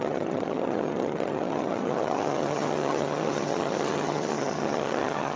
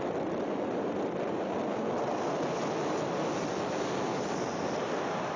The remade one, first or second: first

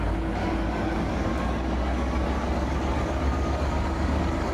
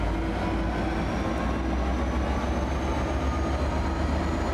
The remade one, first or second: first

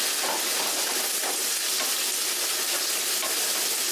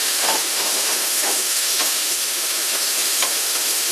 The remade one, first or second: second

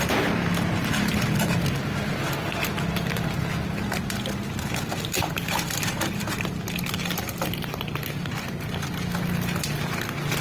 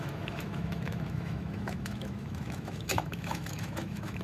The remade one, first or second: second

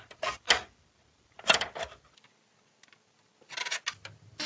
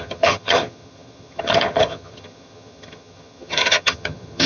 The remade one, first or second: second